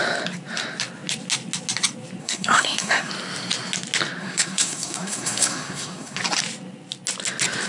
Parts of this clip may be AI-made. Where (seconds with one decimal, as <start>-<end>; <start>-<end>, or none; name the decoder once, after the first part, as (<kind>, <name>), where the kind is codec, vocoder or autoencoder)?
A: 2.2-3.1 (codec, SNAC); 4.2-6.2